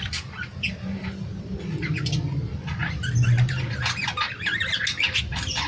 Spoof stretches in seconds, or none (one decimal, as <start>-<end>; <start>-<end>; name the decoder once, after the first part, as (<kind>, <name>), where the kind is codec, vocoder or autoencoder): none